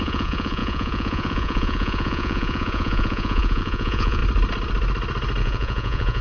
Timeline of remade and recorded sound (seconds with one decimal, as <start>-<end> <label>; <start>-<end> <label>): 0.0-4.2 remade; 4.2-5.4 recorded; 5.4-6.2 remade